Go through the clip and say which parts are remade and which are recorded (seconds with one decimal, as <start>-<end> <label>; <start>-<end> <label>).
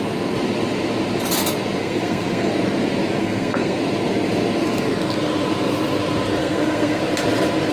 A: 0.0-1.8 recorded; 1.8-2.5 remade; 2.5-3.2 recorded; 3.2-3.8 remade; 3.8-6.4 recorded; 6.4-7.0 remade; 7.0-7.7 recorded